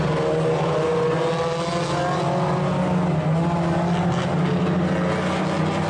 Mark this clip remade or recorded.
recorded